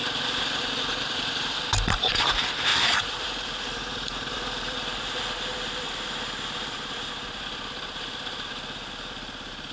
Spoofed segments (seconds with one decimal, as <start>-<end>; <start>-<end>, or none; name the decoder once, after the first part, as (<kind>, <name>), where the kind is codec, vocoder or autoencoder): 2.7-7.1 (vocoder, BigVGAN v2)